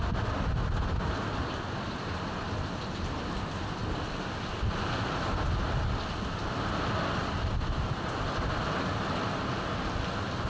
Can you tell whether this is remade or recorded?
recorded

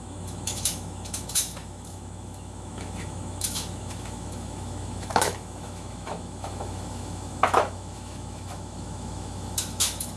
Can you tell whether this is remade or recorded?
remade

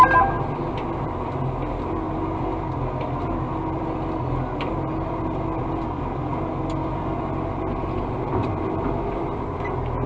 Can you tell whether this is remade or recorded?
recorded